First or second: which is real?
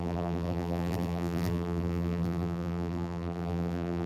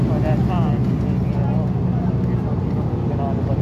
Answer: second